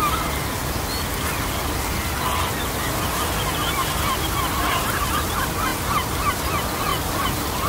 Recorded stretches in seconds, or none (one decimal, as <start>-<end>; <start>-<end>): 0.0-5.7; 6.4-7.7